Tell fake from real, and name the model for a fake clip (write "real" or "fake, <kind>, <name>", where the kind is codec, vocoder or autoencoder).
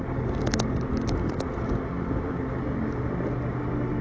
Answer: real